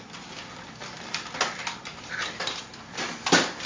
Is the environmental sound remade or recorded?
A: recorded